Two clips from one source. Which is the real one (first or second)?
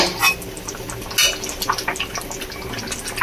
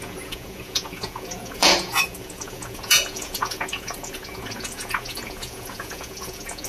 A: first